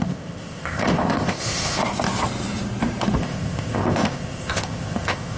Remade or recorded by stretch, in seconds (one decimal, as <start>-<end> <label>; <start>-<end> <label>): 0.0-1.8 remade; 1.8-3.2 recorded; 3.2-5.4 remade